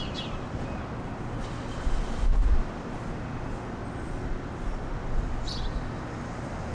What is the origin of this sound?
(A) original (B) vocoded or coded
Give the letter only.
A